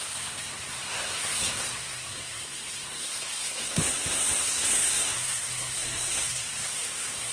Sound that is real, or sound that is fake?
fake